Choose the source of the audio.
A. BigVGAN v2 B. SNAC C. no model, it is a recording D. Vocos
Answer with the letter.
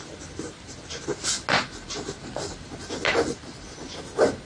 C